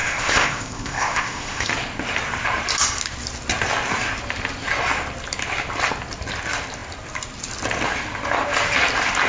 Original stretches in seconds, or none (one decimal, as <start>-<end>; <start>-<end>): 1.7-9.3